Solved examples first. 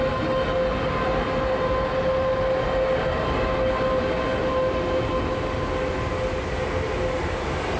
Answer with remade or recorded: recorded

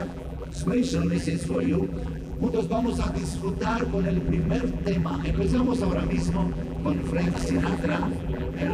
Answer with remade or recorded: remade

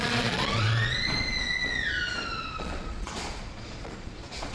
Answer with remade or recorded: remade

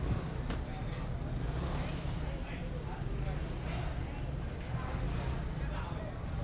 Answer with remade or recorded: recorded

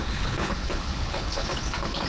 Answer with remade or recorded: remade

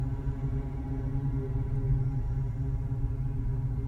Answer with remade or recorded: recorded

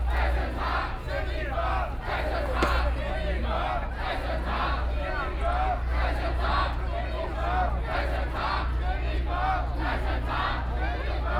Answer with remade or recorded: recorded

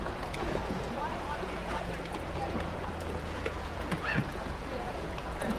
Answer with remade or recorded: remade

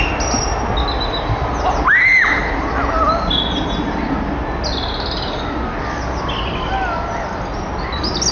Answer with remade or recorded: recorded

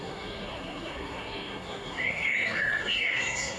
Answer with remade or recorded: remade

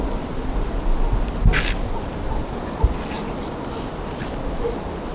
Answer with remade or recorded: recorded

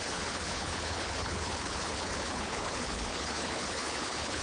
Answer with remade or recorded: remade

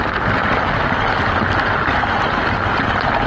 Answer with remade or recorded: recorded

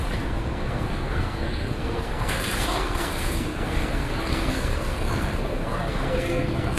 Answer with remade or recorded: remade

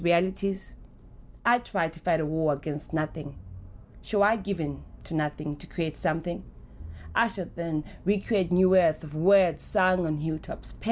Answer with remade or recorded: recorded